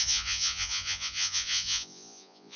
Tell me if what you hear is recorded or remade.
remade